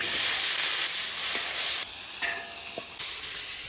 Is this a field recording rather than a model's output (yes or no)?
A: yes